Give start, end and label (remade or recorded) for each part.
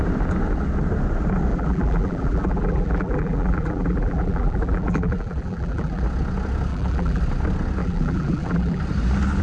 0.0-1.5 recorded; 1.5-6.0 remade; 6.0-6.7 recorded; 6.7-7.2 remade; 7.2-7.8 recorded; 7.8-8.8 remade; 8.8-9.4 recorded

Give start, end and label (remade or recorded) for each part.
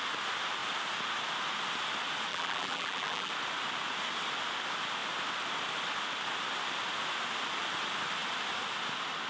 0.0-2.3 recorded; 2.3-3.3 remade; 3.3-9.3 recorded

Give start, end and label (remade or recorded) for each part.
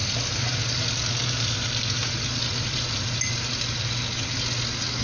0.0-3.0 remade; 3.0-5.0 recorded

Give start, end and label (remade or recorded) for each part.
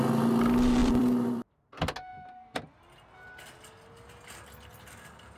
0.0-0.8 recorded; 0.8-1.7 remade; 1.7-2.1 recorded; 2.1-2.8 remade; 2.8-5.4 recorded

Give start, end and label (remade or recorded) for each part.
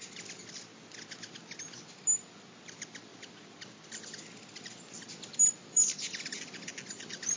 0.0-7.4 recorded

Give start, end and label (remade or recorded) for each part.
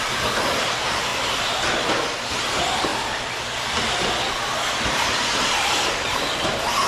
0.0-1.1 remade; 1.1-2.4 recorded; 2.4-2.9 remade; 2.9-4.7 recorded; 4.7-6.9 remade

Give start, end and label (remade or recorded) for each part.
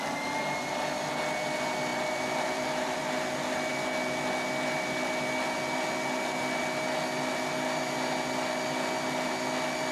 0.0-1.9 recorded; 1.9-3.0 remade; 3.0-9.9 recorded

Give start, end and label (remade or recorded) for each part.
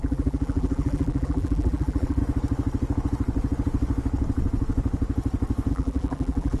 0.0-2.2 remade; 2.2-5.7 recorded; 5.7-6.6 remade